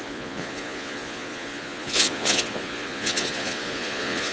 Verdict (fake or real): fake